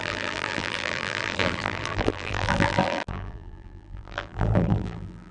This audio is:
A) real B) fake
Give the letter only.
B